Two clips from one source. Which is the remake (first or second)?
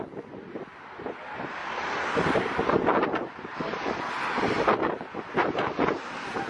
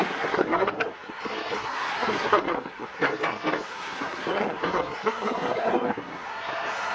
second